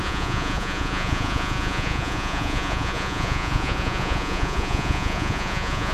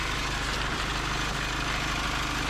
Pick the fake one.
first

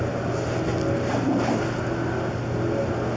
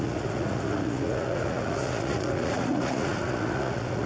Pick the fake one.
second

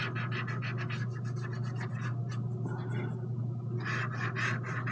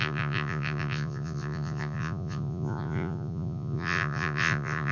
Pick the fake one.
second